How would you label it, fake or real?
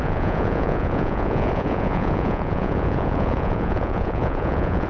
fake